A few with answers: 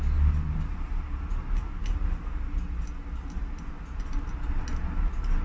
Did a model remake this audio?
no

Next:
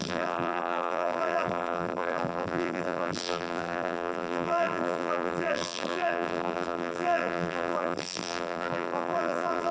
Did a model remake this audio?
yes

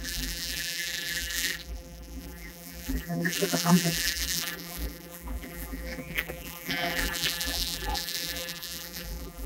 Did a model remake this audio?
yes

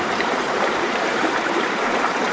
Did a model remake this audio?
yes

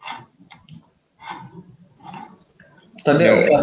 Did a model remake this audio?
yes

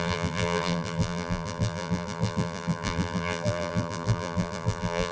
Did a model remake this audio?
yes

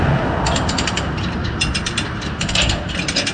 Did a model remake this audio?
no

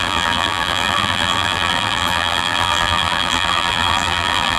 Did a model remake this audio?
yes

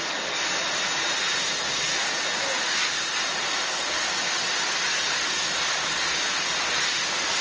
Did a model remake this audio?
no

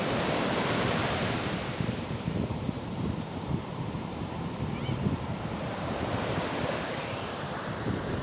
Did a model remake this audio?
yes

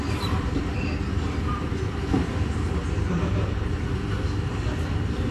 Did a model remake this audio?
no